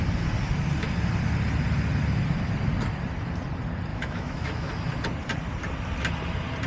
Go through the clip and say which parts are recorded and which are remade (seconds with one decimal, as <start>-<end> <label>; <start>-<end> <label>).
0.0-3.9 recorded; 3.9-4.7 remade; 4.7-6.7 recorded